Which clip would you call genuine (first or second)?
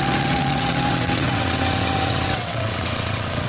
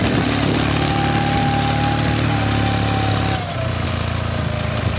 second